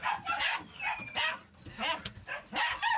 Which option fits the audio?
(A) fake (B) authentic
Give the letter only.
B